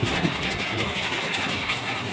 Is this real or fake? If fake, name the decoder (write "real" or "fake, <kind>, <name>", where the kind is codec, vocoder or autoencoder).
fake, codec, SNAC